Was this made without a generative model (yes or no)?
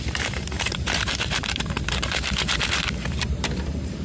no